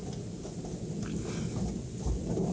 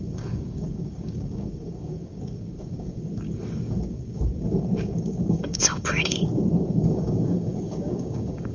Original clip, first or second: first